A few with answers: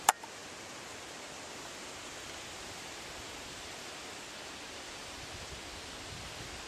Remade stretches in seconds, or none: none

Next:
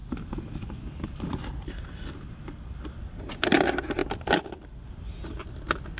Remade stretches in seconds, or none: none

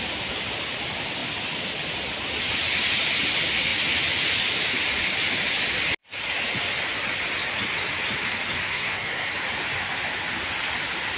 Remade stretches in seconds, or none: 8.6-9.3

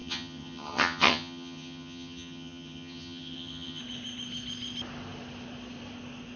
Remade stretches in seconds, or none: 0.0-3.8

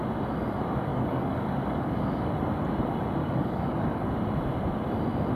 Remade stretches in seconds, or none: 0.9-2.3; 3.2-4.1